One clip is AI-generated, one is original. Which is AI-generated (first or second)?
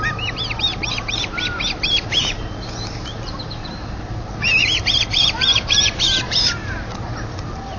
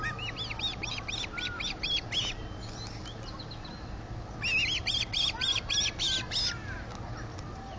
first